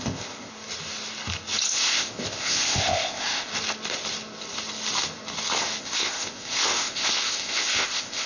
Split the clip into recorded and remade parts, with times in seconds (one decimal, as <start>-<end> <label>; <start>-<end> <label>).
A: 0.0-0.5 remade; 0.5-1.7 recorded; 1.7-3.5 remade; 3.5-5.8 recorded; 5.8-8.3 remade